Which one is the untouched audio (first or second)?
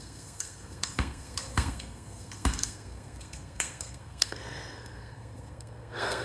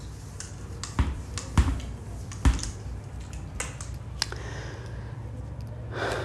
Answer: second